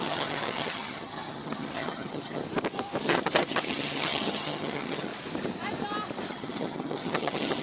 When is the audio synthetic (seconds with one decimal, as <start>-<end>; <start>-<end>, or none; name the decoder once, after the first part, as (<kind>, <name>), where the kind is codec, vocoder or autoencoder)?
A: 0.0-2.4 (vocoder, HiFi-GAN); 3.0-5.1; 6.3-7.6